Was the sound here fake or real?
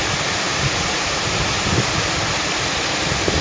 real